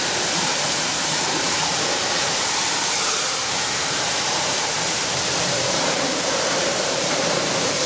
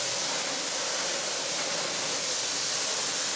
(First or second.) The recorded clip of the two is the second